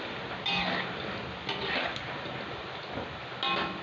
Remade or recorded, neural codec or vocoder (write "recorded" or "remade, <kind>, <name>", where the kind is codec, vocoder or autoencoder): recorded